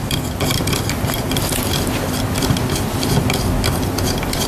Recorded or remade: recorded